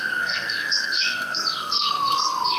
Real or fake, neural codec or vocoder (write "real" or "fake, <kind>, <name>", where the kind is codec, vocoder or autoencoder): fake, codec, SNAC